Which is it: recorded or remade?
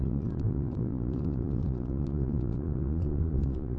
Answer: remade